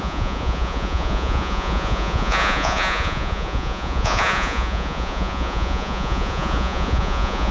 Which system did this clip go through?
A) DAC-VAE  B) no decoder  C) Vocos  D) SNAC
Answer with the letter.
C